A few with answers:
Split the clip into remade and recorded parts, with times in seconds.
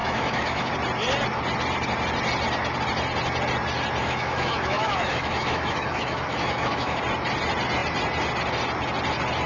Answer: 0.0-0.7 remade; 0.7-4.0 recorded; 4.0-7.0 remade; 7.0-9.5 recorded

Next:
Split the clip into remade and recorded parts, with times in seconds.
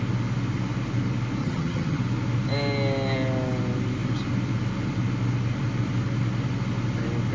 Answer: 0.0-1.4 recorded; 1.4-2.0 remade; 2.0-7.3 recorded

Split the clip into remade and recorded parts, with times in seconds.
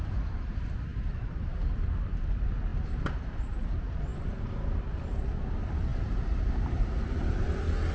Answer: 0.0-7.9 recorded